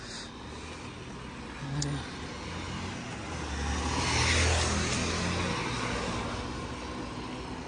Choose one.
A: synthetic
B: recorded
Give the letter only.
B